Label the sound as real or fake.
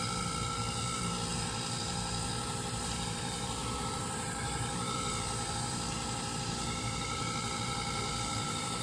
fake